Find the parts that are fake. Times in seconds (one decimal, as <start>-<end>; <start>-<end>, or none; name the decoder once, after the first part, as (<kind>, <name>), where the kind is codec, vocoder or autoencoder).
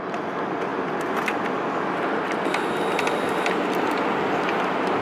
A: none